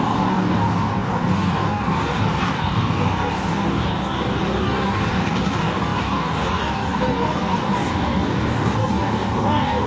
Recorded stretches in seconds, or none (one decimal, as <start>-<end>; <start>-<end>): none